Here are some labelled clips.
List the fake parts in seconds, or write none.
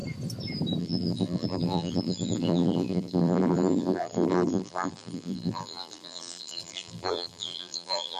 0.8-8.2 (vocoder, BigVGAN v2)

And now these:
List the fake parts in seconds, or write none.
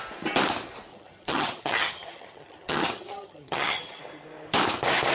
0.9-4.0 (vocoder, HiFi-GAN)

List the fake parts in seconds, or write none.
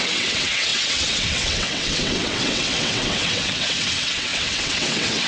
0.0-5.3 (vocoder, WaveNeXt)